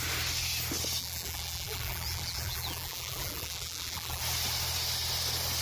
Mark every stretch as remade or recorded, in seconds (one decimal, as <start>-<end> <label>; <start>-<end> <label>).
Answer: 0.0-1.0 recorded; 1.0-4.2 remade; 4.2-5.6 recorded